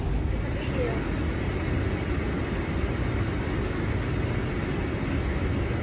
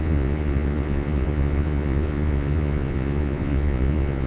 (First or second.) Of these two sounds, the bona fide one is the first